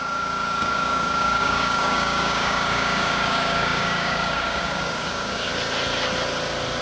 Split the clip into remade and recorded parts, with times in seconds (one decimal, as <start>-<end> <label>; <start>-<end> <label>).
0.0-5.5 remade; 5.5-6.8 recorded